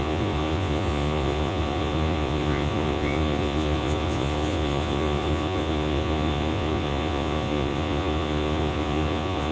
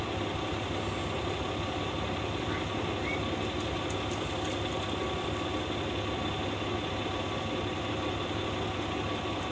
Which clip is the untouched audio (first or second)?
second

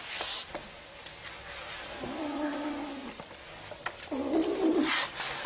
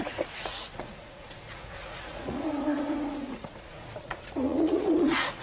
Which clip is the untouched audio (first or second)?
first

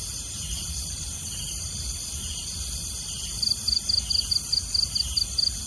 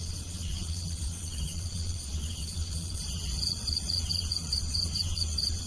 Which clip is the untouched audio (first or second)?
first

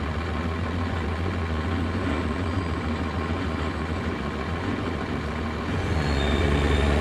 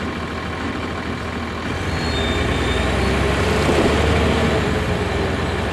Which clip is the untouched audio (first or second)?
second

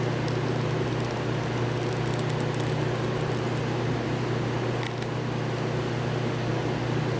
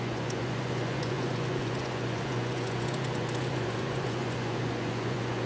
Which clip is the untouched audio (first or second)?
first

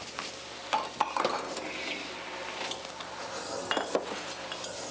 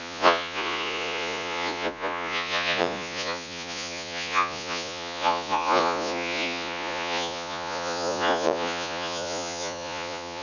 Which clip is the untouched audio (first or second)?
first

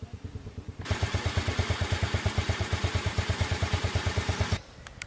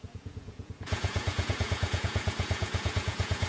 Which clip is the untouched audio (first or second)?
first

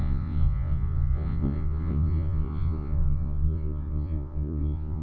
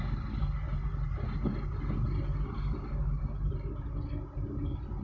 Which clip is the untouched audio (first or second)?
second